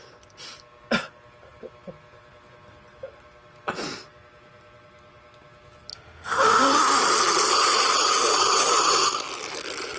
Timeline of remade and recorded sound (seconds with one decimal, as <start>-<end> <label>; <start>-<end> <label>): 0.0-5.9 recorded; 5.9-6.8 remade; 6.8-10.0 recorded